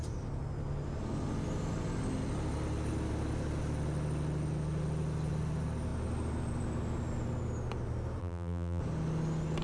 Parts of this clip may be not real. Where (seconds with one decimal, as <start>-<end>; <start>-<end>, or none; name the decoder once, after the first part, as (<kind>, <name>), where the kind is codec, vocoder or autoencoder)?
8.2-8.8 (vocoder, BigVGAN v2)